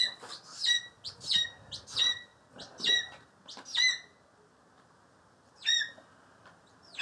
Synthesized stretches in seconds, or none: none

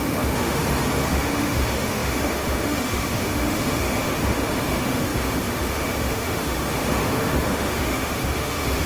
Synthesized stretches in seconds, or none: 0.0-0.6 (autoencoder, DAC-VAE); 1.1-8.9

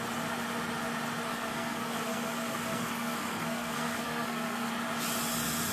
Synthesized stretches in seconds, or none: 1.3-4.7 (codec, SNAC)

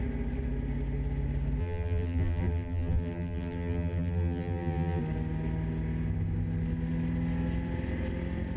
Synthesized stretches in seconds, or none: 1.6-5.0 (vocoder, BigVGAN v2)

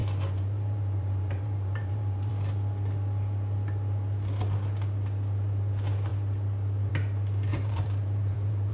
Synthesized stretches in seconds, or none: 0.0-2.3 (vocoder, BigVGAN v2); 7.5-8.7

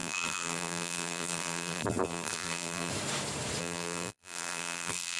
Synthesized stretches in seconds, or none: 0.0-2.9 (vocoder, BigVGAN v2); 3.6-5.2